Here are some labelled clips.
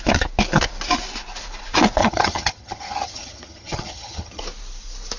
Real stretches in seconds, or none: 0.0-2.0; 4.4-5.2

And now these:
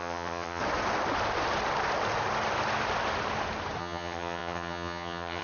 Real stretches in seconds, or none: 0.6-3.8